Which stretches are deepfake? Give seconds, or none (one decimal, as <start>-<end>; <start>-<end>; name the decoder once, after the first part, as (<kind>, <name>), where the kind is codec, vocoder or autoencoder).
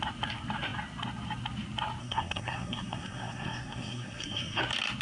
2.0-4.6 (codec, SNAC)